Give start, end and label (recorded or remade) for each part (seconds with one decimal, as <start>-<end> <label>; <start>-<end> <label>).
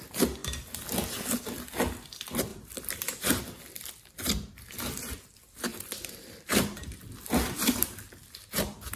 0.0-2.5 recorded; 2.5-3.1 remade; 3.1-5.7 recorded; 5.7-6.5 remade; 6.5-9.0 recorded